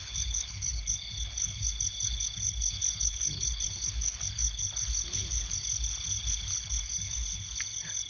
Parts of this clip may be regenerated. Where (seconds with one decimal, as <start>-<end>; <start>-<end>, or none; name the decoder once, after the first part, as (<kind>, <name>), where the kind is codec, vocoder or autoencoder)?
0.0-8.1 (codec, HILCodec)